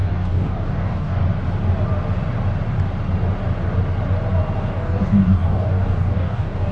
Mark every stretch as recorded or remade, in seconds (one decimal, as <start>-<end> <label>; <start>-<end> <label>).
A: 0.0-1.2 remade; 1.2-4.7 recorded; 4.7-6.7 remade